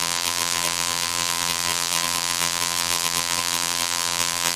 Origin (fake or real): fake